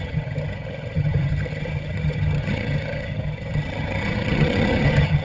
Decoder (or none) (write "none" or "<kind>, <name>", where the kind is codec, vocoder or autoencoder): vocoder, HiFi-GAN